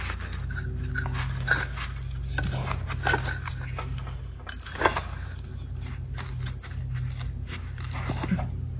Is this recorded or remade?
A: recorded